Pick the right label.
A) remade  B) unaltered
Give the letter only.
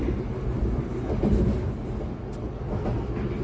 B